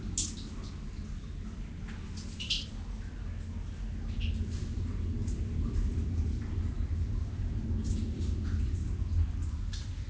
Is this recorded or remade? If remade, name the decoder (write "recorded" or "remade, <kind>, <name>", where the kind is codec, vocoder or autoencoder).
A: recorded